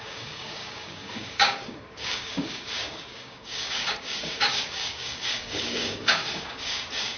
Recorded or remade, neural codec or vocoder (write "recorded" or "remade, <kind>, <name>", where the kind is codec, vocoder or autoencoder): remade, codec, DAC